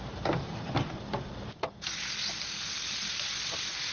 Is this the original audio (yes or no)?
yes